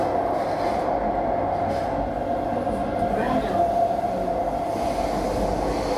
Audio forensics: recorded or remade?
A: recorded